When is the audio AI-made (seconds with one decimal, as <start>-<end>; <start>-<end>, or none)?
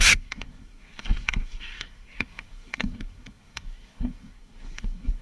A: 0.0-5.2